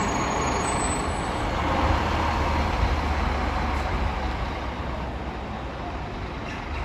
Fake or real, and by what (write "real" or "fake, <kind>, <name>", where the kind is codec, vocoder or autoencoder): real